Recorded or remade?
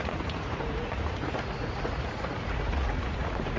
remade